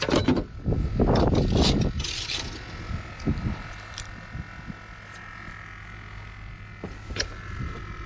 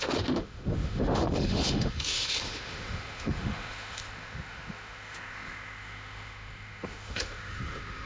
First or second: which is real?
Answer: first